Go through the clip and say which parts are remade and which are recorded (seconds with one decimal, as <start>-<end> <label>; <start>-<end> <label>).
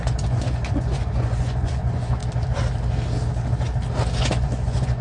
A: 0.0-2.2 remade; 2.2-4.2 recorded; 4.2-5.0 remade